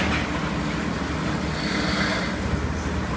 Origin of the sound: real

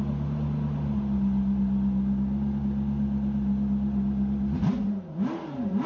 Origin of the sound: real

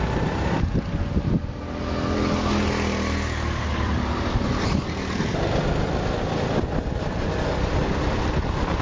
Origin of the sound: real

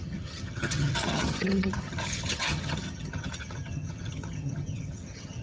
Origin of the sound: fake